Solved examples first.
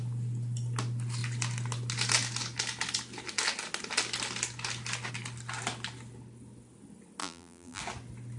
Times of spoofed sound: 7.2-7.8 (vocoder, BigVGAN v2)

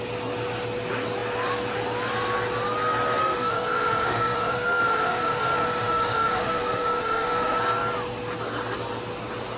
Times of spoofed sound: 3.2-7.6 (autoencoder, DAC-VAE)